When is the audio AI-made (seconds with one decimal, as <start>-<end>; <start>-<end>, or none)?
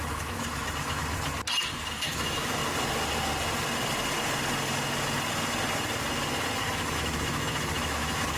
0.0-1.0; 1.7-2.6; 6.6-8.4